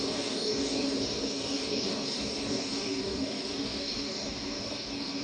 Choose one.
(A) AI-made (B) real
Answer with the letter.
A